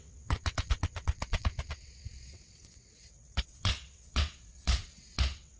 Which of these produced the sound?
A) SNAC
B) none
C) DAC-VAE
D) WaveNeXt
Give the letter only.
D